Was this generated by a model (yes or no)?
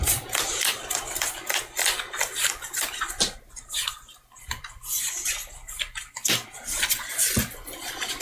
yes